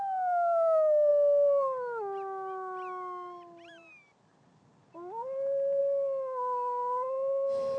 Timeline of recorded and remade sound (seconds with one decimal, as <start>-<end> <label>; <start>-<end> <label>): 0.0-7.8 recorded